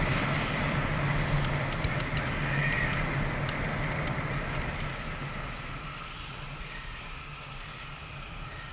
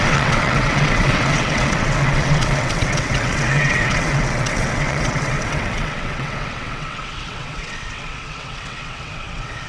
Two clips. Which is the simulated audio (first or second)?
second